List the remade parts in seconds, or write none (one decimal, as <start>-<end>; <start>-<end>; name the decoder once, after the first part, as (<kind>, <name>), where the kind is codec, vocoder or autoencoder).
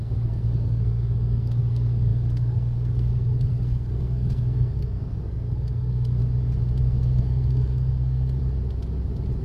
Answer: 0.0-6.2 (codec, SNAC); 6.8-8.4